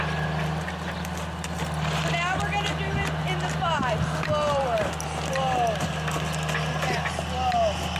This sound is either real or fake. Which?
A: real